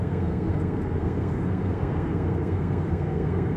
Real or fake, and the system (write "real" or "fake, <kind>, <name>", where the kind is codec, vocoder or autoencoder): fake, codec, SNAC